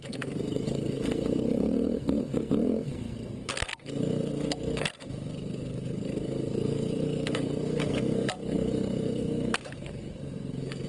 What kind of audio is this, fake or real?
fake